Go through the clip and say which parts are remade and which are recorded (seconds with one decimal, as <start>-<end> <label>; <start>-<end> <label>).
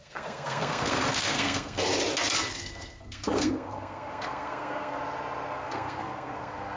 0.0-1.9 remade; 1.9-2.5 recorded; 2.5-5.0 remade; 5.0-5.5 recorded; 5.5-6.8 remade